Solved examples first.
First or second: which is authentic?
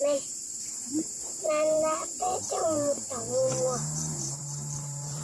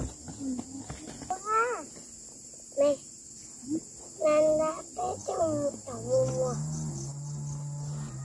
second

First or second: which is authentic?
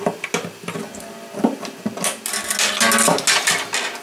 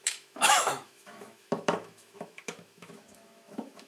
first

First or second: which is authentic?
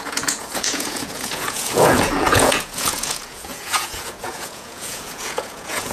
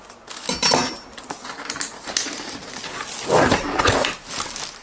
second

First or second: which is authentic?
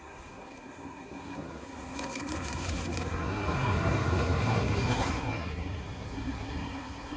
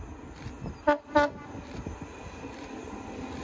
second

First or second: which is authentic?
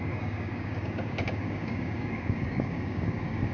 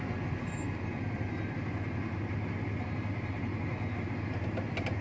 second